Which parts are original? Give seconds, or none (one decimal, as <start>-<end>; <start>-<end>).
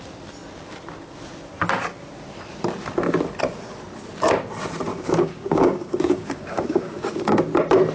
0.0-4.9; 7.4-7.9